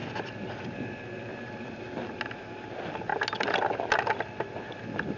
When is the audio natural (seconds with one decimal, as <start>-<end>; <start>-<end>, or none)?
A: 0.5-1.3; 2.1-5.2